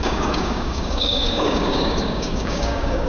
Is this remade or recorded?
remade